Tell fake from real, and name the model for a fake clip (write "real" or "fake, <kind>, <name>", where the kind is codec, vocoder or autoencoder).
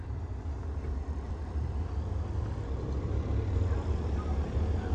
fake, vocoder, BigVGAN v2